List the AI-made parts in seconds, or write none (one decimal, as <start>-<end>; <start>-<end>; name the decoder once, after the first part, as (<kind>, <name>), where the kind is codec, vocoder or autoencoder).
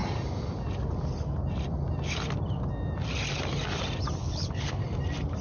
4.2-4.8 (codec, HILCodec)